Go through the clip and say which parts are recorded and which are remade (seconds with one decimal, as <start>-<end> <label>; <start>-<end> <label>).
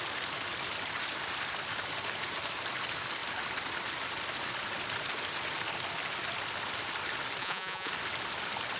0.0-7.4 recorded; 7.4-7.9 remade; 7.9-8.8 recorded